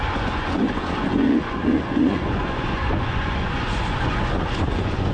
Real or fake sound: fake